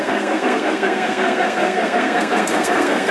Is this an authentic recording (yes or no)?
no